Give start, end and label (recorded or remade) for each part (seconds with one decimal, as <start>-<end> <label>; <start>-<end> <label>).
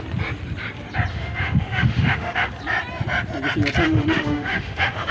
0.0-1.1 recorded; 1.1-2.5 remade; 2.5-3.8 recorded; 3.8-5.1 remade